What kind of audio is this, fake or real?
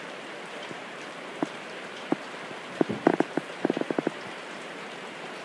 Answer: fake